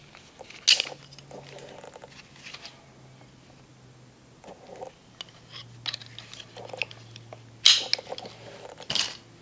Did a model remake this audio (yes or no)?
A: no